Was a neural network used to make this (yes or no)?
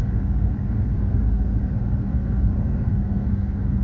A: yes